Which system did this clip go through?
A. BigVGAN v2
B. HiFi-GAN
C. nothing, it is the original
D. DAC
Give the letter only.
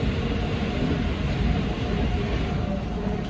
C